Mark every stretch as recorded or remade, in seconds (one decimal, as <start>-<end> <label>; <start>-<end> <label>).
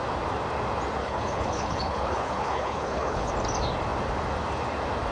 0.0-1.0 recorded; 1.0-3.3 remade; 3.3-5.1 recorded